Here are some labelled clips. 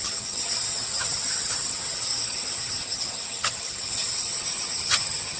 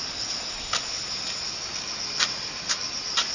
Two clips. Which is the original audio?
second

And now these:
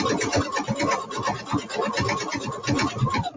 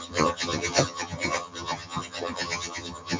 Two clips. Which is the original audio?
first